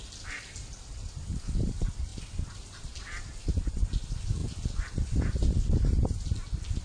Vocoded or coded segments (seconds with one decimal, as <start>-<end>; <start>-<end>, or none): 0.0-4.4; 5.2-6.8